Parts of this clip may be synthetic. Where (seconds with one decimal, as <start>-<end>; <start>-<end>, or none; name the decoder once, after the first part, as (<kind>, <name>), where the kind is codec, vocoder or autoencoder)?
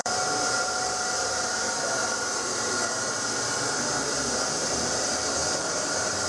0.0-2.8 (vocoder, BigVGAN v2); 4.6-6.3